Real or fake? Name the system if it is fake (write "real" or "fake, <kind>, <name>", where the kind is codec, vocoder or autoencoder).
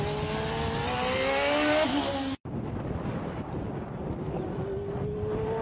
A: real